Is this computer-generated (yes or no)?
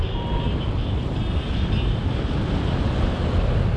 no